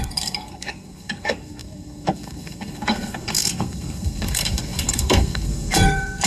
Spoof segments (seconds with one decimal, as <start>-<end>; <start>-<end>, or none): 0.0-6.3